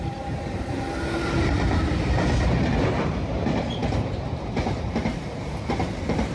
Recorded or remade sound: remade